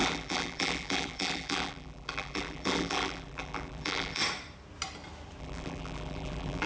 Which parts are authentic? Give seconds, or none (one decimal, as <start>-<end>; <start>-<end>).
4.2-5.4